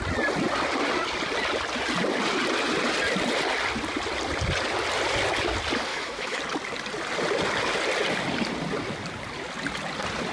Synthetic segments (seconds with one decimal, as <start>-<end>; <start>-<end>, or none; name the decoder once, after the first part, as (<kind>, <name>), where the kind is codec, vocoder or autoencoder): 5.9-6.4 (autoencoder, DAC-VAE)

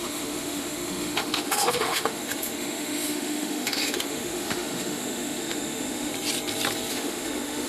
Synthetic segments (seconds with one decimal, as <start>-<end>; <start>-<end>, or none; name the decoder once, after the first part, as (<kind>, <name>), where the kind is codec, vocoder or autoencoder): 0.0-6.1 (autoencoder, DAC-VAE); 6.9-7.7

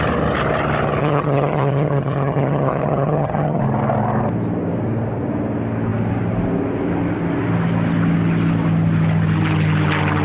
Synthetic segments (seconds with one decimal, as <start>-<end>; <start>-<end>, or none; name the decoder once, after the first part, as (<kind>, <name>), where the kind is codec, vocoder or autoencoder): 1.0-3.6 (vocoder, HiFi-GAN)

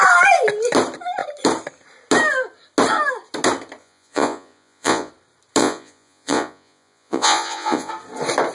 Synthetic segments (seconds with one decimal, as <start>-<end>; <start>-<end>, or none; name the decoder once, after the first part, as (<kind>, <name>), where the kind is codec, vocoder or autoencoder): 3.8-5.1 (vocoder, Vocos); 5.6-7.9

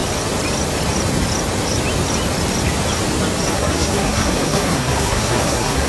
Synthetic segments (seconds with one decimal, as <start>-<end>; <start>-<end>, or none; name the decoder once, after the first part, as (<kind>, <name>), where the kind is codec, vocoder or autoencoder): 3.5-5.9 (codec, SNAC)

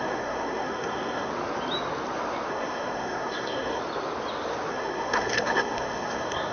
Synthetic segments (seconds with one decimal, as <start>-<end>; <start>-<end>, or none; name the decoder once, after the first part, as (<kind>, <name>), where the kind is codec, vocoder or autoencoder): 0.0-1.3 (codec, SNAC); 2.5-3.8; 4.7-6.5

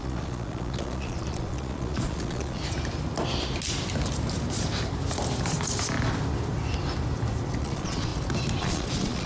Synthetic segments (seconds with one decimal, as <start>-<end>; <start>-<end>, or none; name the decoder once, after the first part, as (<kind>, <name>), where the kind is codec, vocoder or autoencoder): 0.0-2.6 (vocoder, Vocos); 7.6-8.1; 8.6-9.3